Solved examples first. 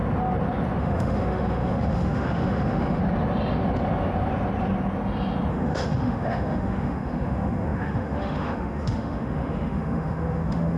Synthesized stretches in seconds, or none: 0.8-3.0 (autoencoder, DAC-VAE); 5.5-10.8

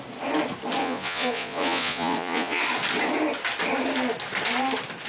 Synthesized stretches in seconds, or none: 0.8-2.6 (vocoder, Vocos)

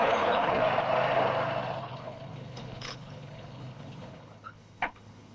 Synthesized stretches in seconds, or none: 0.0-0.6 (codec, HILCodec); 1.8-5.3

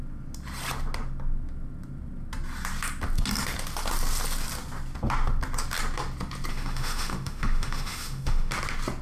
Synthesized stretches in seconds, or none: 6.5-8.5 (autoencoder, DAC-VAE)

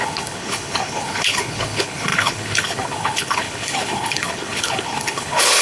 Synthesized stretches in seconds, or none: 0.0-5.6 (codec, HILCodec)

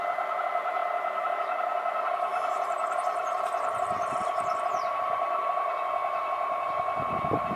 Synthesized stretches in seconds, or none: 2.3-5.5 (vocoder, BigVGAN v2)